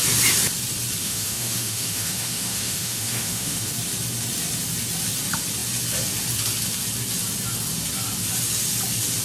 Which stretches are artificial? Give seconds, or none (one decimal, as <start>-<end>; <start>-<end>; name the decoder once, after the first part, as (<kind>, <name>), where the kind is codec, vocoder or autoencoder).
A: 1.0-3.7 (autoencoder, DAC-VAE)